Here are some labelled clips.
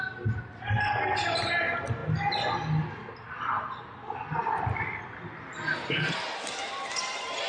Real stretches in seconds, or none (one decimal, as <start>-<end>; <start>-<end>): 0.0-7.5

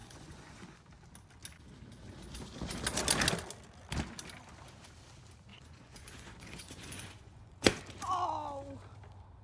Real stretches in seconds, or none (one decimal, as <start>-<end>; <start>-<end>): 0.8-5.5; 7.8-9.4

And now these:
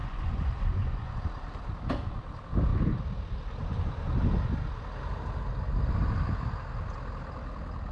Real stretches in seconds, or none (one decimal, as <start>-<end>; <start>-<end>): 1.2-7.9

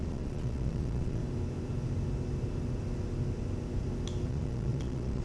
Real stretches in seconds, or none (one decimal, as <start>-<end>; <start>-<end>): 1.2-4.3